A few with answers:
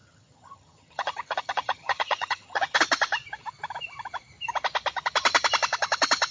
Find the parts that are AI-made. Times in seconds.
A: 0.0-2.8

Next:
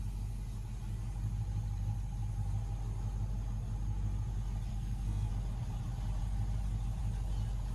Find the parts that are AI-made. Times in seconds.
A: 4.7-5.3